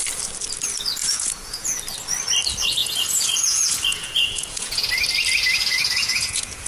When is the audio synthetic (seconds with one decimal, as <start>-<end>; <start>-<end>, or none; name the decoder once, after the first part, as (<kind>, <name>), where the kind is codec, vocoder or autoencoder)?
1.0-1.8 (vocoder, Vocos); 2.8-4.9; 5.6-6.7